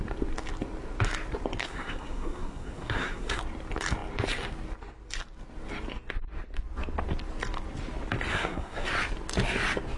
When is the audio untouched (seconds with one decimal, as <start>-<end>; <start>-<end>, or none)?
0.0-1.6; 3.4-8.3; 8.9-10.0